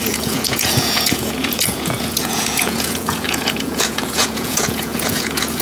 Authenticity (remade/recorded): remade